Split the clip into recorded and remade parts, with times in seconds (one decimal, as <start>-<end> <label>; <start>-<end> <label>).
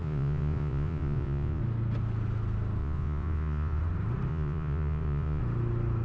0.0-1.6 remade; 1.6-2.8 recorded; 2.8-3.8 remade; 3.8-4.3 recorded; 4.3-5.4 remade; 5.4-6.0 recorded